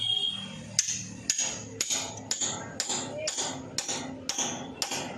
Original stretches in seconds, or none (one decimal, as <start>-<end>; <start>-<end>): 0.0-5.2

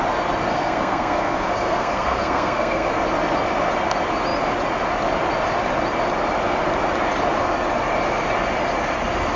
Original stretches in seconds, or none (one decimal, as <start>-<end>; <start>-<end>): 0.0-0.5; 2.9-9.4